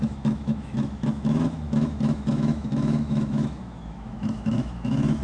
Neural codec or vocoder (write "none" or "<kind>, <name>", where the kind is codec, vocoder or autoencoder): autoencoder, DAC-VAE